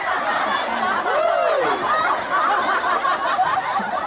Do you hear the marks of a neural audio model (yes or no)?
no